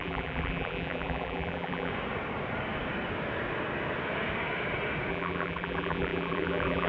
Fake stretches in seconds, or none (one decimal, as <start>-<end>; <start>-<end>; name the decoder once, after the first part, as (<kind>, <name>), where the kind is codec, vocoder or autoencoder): 0.0-1.9 (vocoder, BigVGAN v2); 5.1-6.9